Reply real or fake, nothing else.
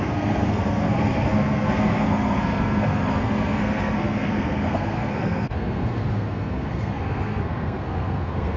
fake